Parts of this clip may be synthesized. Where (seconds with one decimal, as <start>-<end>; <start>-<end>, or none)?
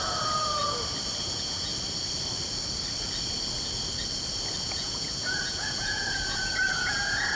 0.0-0.6; 1.2-1.7; 4.6-7.4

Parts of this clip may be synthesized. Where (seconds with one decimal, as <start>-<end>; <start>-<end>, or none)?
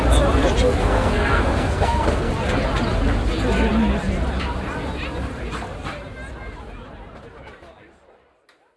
0.8-2.3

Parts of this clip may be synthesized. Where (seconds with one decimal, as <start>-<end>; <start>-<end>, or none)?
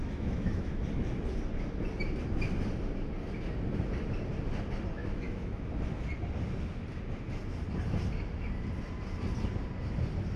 0.0-0.8; 5.0-5.6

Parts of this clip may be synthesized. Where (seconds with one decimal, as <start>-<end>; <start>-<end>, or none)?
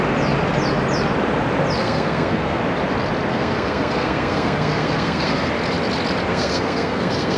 1.8-2.6; 3.3-5.5; 6.3-7.4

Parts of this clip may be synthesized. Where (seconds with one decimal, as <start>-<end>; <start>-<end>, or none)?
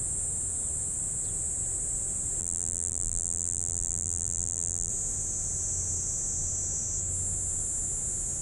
2.4-4.9